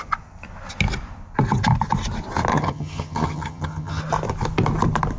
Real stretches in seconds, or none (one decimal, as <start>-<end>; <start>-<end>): 0.0-2.5; 4.0-5.2